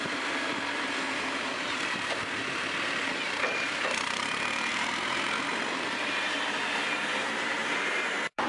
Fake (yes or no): yes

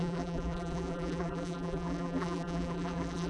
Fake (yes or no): yes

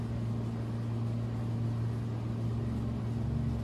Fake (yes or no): no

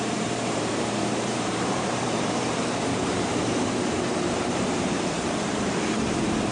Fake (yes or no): yes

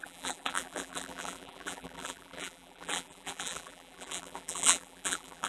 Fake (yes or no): yes